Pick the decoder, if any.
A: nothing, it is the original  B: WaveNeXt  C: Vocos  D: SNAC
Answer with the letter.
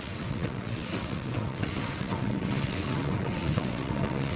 B